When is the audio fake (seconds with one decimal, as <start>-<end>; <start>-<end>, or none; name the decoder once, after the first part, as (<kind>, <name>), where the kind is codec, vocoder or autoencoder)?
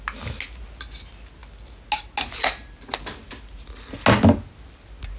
none